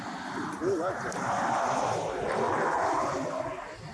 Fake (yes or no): no